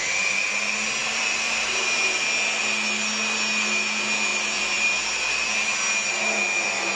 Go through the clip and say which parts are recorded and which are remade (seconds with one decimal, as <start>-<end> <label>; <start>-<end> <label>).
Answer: 0.0-1.0 recorded; 1.0-2.6 remade; 2.6-4.3 recorded; 4.3-5.5 remade; 5.5-7.0 recorded